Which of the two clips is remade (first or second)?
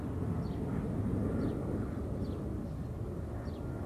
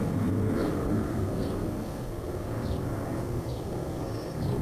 second